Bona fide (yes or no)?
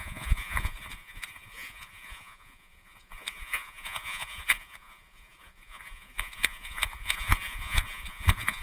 no